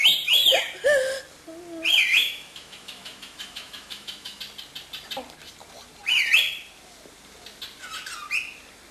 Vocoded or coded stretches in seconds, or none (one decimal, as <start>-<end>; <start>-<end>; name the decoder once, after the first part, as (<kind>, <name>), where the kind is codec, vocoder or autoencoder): 2.1-4.4 (autoencoder, DAC-VAE)